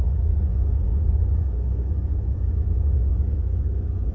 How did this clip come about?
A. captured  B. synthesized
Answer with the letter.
B